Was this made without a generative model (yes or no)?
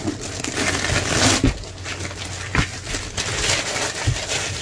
yes